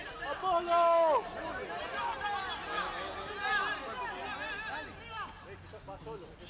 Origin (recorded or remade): recorded